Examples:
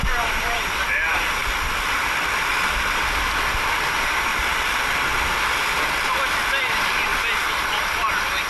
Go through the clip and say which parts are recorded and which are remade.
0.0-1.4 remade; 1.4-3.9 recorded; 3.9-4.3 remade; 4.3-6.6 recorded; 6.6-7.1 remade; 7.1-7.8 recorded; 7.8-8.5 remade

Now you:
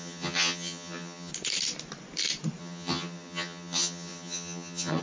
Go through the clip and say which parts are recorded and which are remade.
0.0-1.3 remade; 1.3-2.6 recorded; 2.6-5.0 remade

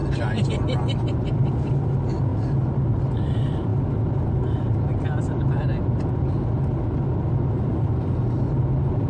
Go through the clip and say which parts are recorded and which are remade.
0.0-9.1 recorded

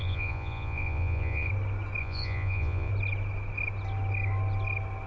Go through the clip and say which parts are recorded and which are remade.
0.0-1.5 remade; 1.5-2.0 recorded; 2.0-2.9 remade; 2.9-5.1 recorded

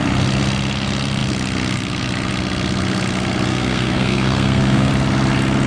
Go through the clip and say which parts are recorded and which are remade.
0.0-3.5 recorded; 3.5-4.9 remade; 4.9-5.7 recorded

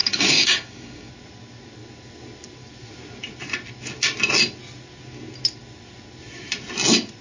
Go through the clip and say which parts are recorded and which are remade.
0.0-1.1 remade; 1.1-7.2 recorded